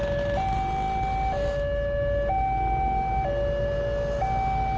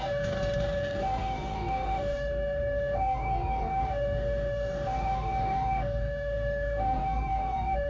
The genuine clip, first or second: first